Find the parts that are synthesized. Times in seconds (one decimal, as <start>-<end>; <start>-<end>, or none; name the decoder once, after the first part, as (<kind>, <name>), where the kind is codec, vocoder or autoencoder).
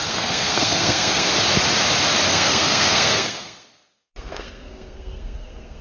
0.0-1.3 (codec, SNAC); 2.3-5.8